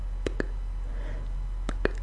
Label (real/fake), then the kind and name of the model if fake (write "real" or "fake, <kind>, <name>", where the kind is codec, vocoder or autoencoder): real